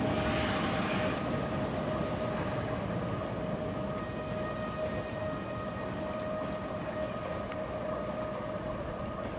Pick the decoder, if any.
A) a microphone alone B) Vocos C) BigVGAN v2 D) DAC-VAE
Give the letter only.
A